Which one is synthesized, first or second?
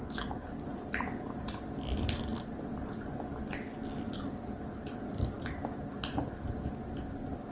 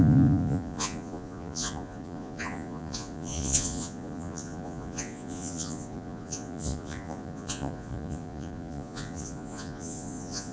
second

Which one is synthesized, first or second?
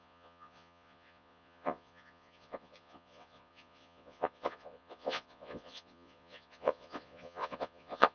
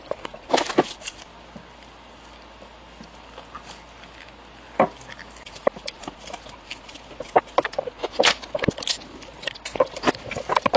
first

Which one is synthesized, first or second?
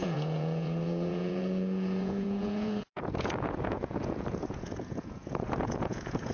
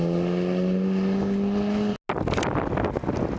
first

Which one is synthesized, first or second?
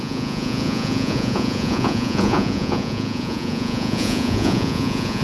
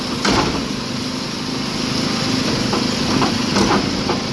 first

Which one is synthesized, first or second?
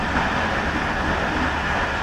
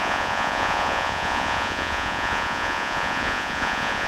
second